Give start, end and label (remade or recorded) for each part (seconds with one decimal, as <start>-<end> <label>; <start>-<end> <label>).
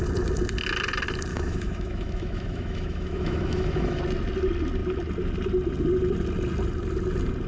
0.0-1.3 recorded; 1.3-4.0 remade; 4.0-7.5 recorded